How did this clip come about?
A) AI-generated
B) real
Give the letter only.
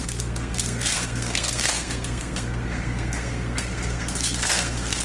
A